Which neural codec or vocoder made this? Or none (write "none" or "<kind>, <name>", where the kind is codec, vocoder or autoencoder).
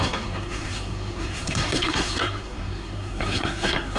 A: codec, SNAC